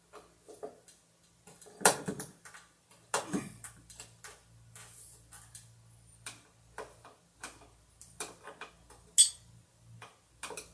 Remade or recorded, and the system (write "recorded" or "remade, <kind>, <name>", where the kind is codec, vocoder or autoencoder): recorded